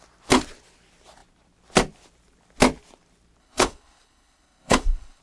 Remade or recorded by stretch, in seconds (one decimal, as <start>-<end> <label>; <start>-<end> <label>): 0.0-3.4 recorded; 3.4-5.2 remade